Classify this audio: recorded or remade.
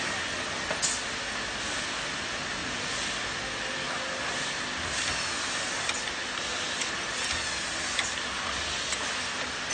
recorded